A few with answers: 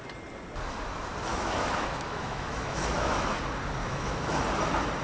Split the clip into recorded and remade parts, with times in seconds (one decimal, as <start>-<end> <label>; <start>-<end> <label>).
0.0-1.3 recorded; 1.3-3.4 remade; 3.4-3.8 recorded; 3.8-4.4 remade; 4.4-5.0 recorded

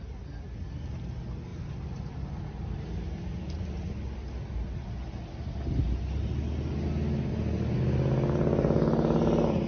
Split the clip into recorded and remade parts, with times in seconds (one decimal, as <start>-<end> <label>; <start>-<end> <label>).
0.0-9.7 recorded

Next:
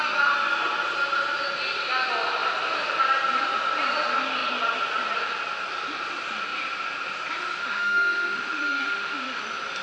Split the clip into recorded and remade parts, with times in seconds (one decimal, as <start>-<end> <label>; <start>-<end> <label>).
0.0-7.6 recorded; 7.6-9.4 remade; 9.4-9.8 recorded

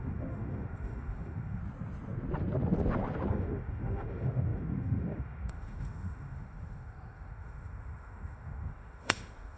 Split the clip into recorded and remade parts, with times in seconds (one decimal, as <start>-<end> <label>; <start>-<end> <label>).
0.0-1.6 remade; 1.6-3.3 recorded; 3.3-9.6 remade

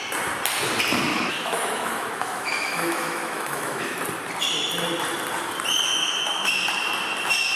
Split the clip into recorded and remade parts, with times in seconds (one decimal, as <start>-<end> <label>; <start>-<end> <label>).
0.0-1.1 recorded; 1.1-4.0 remade; 4.0-5.9 recorded; 5.9-6.5 remade; 6.5-7.6 recorded